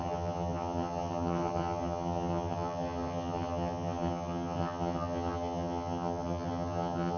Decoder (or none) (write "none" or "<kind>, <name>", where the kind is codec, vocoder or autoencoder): vocoder, HiFi-GAN